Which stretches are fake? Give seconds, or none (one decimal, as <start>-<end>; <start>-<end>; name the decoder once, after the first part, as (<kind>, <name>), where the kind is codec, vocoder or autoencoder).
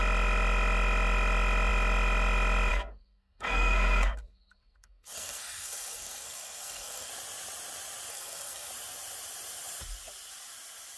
2.7-7.1 (codec, SNAC); 8.1-8.7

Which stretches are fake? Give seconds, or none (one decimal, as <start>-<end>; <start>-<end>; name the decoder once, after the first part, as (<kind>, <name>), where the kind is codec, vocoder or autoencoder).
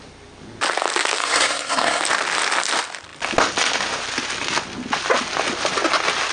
1.2-2.0 (codec, SNAC)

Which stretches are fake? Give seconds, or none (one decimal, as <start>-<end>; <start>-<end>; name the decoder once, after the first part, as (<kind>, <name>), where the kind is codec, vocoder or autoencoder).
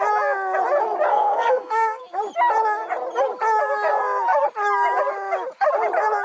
1.1-2.0 (codec, SNAC)